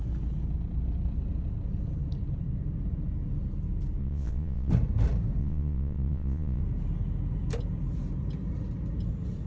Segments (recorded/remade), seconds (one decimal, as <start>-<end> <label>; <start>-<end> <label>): 0.0-4.0 recorded; 4.0-4.7 remade; 4.7-5.4 recorded; 5.4-6.6 remade; 6.6-9.5 recorded